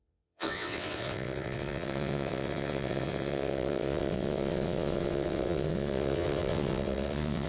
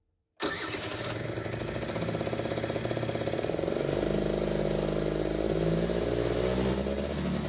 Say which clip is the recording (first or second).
second